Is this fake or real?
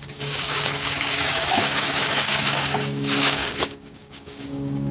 fake